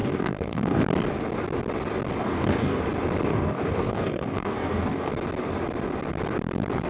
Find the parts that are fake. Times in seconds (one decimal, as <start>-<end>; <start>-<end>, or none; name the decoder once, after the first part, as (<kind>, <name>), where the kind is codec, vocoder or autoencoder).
0.0-0.8 (codec, DAC); 2.2-2.8; 3.3-5.1